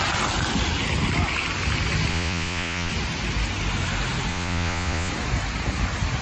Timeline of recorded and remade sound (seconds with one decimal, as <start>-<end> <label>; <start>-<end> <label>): 0.0-2.1 recorded; 2.1-2.9 remade; 2.9-4.3 recorded; 4.3-5.1 remade; 5.1-6.2 recorded